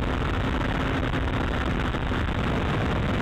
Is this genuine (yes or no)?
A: yes